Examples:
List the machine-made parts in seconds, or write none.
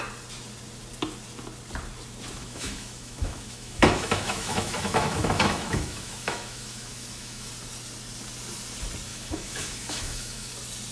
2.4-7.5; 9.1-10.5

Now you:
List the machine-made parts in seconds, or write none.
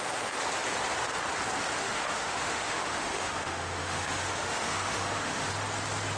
1.8-5.5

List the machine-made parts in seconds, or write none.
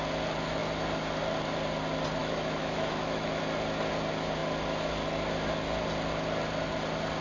2.2-3.4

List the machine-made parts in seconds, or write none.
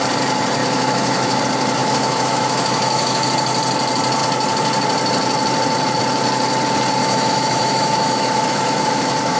0.6-1.4; 1.8-3.3; 7.0-9.4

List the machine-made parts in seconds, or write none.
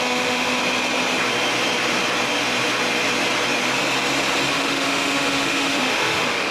0.0-0.6; 4.5-6.5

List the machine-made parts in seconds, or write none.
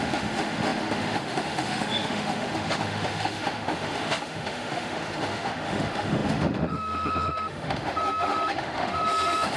0.0-9.6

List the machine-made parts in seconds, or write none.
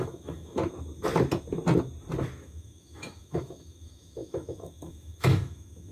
0.0-0.6; 2.4-5.9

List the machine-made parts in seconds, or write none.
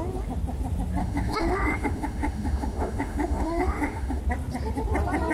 1.0-4.2